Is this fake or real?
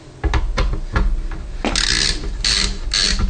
real